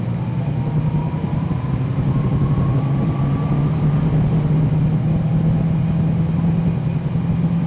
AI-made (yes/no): no